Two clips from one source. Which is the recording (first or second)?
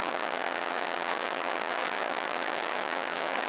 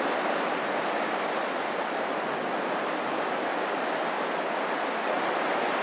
second